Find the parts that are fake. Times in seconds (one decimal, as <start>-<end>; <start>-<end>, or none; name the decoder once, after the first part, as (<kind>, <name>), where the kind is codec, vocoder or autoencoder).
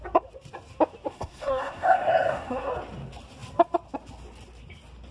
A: 1.1-2.7 (codec, SNAC)